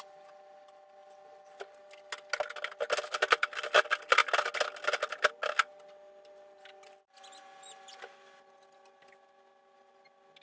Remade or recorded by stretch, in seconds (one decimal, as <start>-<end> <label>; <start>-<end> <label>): 0.0-10.4 recorded